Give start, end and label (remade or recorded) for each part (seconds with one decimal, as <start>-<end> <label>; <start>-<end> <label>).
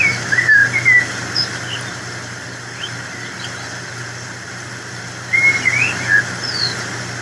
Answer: 0.0-7.2 recorded